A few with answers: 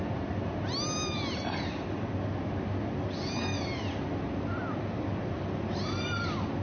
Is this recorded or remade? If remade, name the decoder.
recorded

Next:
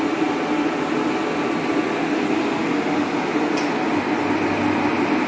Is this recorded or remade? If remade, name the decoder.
recorded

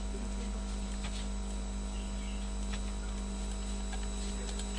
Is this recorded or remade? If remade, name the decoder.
recorded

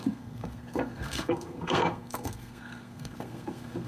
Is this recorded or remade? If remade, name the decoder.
remade, codec, SNAC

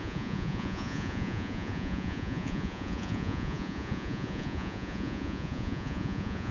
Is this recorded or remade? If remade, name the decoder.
remade, vocoder, Vocos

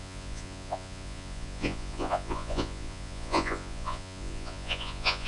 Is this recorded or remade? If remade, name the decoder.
remade, vocoder, Vocos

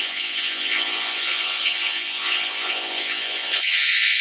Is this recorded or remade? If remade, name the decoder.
remade, vocoder, Vocos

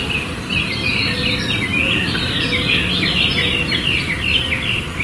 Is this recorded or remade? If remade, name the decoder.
recorded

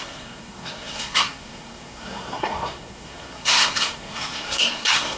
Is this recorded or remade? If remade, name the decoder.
remade, codec, SNAC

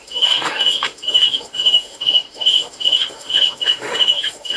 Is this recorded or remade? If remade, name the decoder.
remade, autoencoder, DAC-VAE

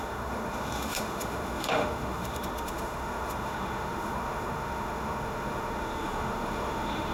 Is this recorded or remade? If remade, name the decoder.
remade, autoencoder, DAC-VAE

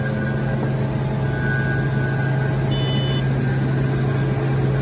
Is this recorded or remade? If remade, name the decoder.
recorded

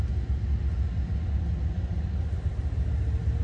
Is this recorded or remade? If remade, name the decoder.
recorded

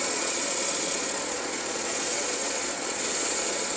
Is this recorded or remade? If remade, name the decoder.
remade, vocoder, Vocos